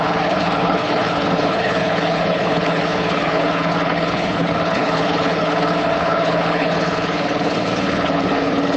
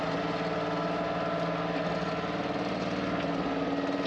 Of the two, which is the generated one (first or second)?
first